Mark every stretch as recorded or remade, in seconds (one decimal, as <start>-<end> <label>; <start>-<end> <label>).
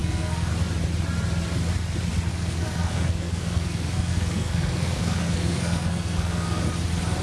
0.0-0.5 remade; 0.5-2.3 recorded; 2.3-6.6 remade; 6.6-7.2 recorded